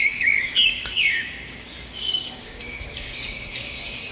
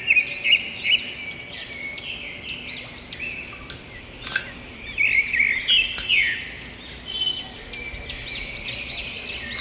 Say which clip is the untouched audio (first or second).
second